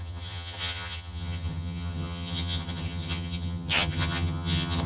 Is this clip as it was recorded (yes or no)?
no